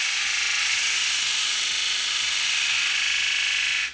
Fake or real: real